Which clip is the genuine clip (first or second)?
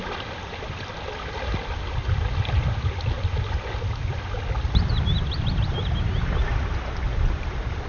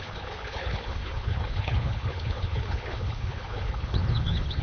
first